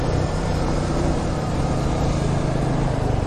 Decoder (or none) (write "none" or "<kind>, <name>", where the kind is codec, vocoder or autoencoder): vocoder, BigVGAN v2